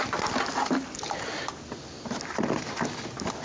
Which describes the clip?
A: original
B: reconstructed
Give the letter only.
A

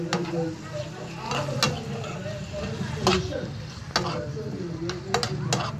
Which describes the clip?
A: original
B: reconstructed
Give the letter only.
A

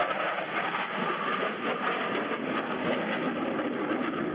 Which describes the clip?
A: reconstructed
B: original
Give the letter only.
B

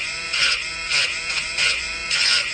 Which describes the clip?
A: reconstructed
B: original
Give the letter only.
A